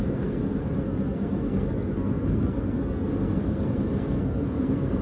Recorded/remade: remade